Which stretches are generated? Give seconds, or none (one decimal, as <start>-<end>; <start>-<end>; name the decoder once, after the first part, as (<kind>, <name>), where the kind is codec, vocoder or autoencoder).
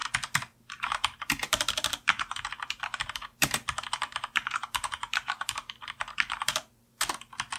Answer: 0.8-7.6 (vocoder, BigVGAN v2)